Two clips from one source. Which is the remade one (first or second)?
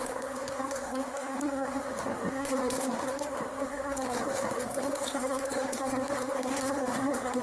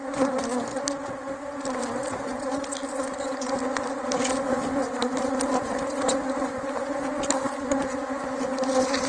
first